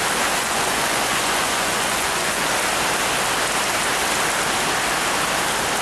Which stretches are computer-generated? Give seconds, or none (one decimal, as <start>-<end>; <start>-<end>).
0.4-2.5